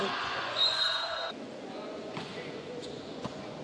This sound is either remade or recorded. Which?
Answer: remade